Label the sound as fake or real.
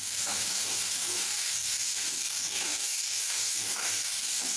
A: fake